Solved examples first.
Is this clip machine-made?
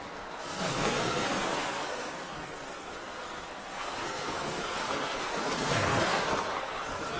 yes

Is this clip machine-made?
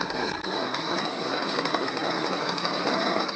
yes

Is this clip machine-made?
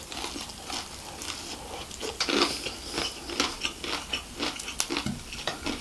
no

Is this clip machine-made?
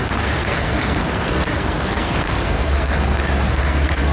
yes